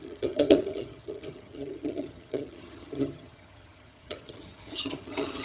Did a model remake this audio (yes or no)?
yes